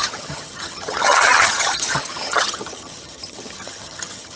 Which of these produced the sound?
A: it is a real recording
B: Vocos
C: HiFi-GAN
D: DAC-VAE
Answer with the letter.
C